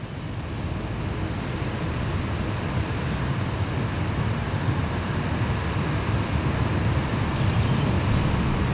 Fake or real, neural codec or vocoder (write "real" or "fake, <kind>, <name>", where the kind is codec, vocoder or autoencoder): real